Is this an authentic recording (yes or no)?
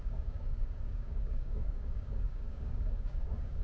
no